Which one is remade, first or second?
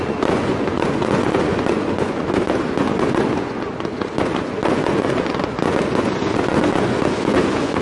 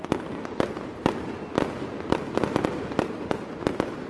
first